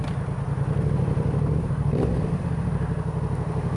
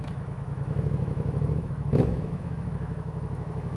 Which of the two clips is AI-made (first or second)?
second